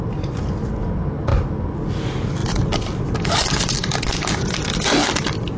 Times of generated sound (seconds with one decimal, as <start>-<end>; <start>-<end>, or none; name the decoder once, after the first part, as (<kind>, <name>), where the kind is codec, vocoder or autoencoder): 1.3-1.9 (vocoder, BigVGAN v2); 2.4-3.3